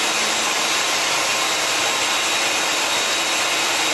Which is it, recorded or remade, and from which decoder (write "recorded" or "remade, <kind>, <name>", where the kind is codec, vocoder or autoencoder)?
recorded